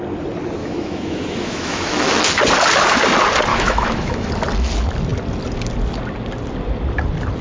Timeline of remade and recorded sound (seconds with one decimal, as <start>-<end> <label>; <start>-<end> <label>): 0.0-0.6 recorded; 0.6-2.2 remade; 2.2-3.5 recorded; 3.5-4.3 remade; 4.3-7.4 recorded